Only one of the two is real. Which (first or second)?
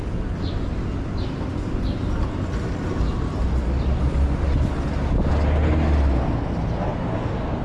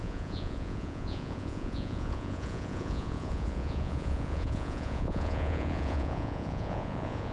first